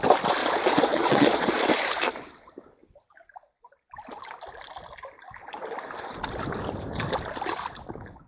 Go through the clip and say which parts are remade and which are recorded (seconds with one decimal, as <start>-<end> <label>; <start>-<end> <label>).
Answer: 0.0-0.4 recorded; 0.4-1.6 remade; 1.6-8.3 recorded